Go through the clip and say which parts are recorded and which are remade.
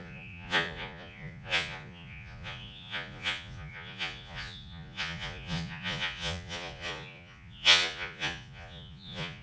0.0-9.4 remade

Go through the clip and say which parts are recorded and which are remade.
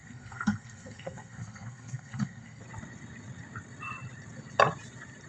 0.0-2.6 remade; 2.6-5.3 recorded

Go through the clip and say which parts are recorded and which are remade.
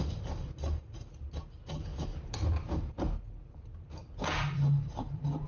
0.0-5.5 recorded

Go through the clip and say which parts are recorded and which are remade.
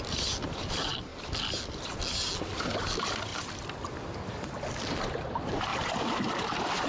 0.0-1.1 remade; 1.1-2.6 recorded; 2.6-6.9 remade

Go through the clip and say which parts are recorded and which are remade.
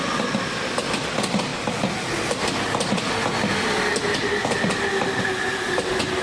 0.0-6.2 recorded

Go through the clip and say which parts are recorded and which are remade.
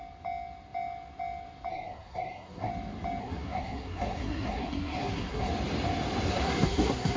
0.0-1.7 recorded; 1.7-2.7 remade; 2.7-3.2 recorded; 3.2-5.5 remade; 5.5-6.3 recorded; 6.3-7.2 remade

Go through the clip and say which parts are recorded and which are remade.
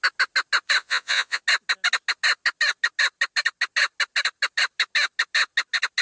0.0-0.8 recorded; 0.8-1.4 remade; 1.4-6.0 recorded